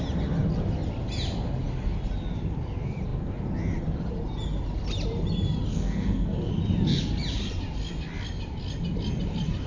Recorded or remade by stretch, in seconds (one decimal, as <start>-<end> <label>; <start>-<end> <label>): 0.0-5.7 recorded; 5.7-6.5 remade; 6.5-9.7 recorded